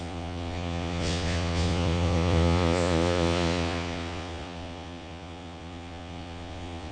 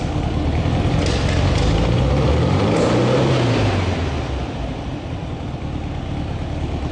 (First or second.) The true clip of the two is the second